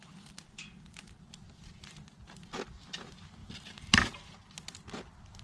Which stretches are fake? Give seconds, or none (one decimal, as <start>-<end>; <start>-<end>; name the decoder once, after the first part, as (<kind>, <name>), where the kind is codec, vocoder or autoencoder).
3.4-4.0 (vocoder, BigVGAN v2)